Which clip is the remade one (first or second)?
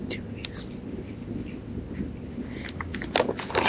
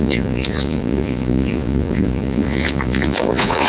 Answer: second